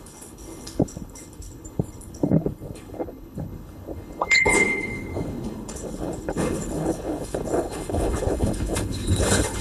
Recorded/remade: remade